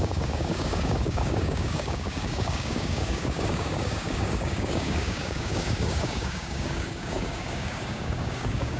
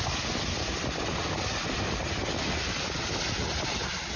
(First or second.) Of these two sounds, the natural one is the second